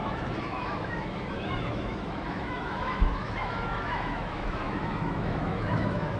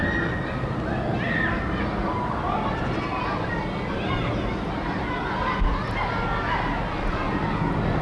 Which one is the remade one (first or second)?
first